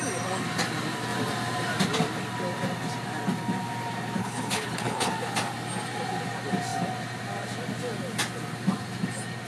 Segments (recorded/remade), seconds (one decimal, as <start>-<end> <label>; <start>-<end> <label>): 0.0-4.2 recorded; 4.2-5.1 remade; 5.1-9.5 recorded